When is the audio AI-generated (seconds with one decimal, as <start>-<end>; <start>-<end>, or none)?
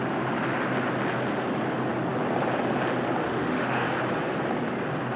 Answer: 3.2-3.9